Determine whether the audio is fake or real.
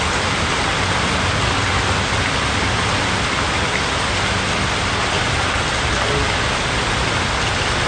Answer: real